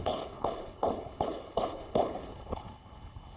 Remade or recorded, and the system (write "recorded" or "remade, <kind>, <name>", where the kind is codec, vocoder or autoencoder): remade, codec, HILCodec